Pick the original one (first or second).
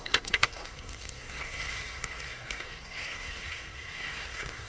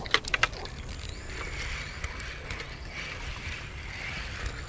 second